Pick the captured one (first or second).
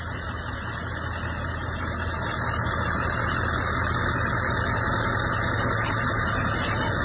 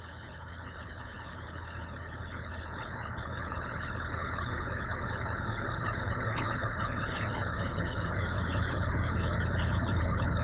first